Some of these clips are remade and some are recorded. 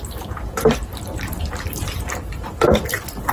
remade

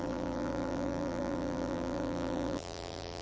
remade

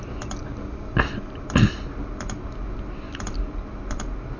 recorded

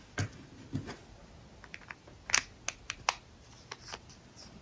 recorded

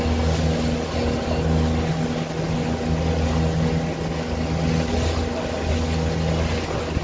recorded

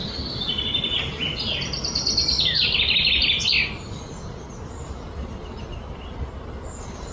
recorded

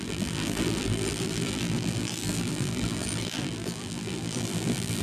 remade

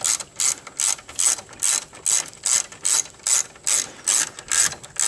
recorded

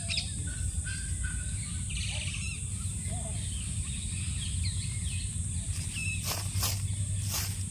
recorded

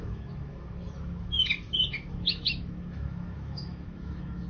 remade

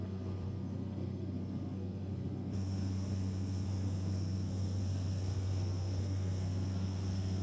remade